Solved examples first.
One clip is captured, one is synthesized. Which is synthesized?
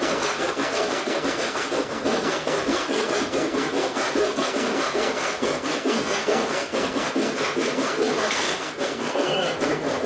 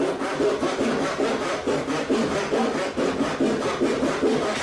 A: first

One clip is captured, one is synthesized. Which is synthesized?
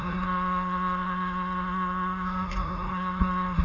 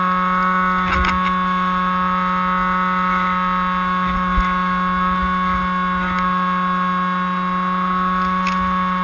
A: first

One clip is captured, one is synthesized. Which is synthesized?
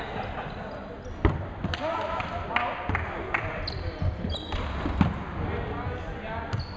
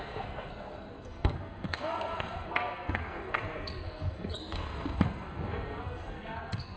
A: second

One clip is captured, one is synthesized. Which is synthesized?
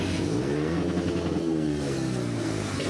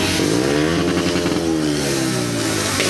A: first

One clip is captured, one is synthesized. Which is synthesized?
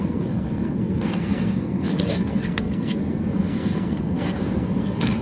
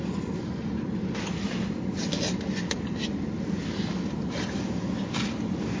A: first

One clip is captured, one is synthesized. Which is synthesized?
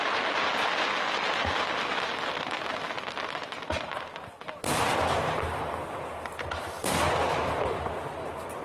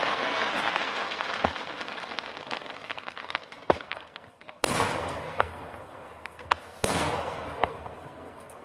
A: second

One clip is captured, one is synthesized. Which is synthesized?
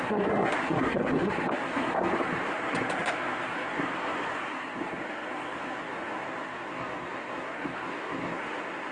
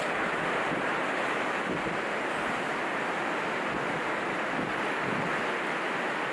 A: first